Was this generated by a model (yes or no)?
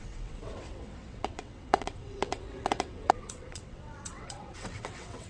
yes